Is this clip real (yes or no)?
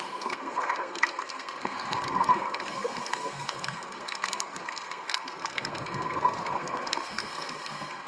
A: no